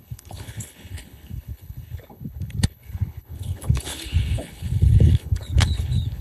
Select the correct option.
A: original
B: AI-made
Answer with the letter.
B